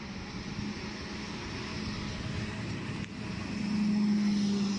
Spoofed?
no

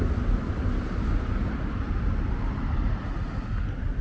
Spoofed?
no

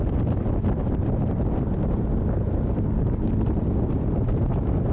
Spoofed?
no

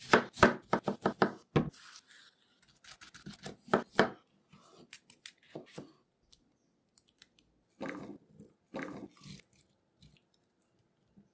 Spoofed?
no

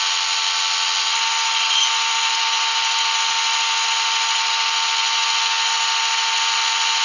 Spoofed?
no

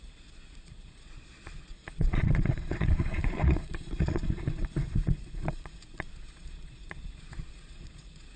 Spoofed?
yes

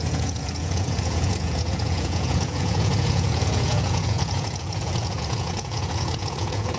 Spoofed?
yes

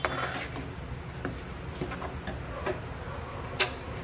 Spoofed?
no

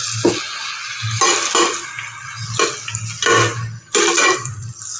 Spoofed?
no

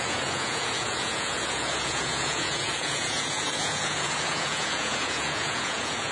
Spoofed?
yes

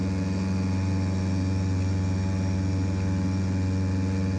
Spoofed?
no